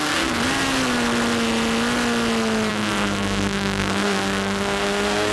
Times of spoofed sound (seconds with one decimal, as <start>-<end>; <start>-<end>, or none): 0.0-0.4; 2.7-5.3